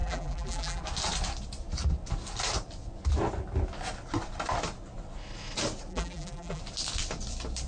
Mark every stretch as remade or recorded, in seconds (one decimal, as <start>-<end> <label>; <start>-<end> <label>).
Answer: 0.0-0.8 remade; 0.8-5.9 recorded; 5.9-6.6 remade; 6.6-7.7 recorded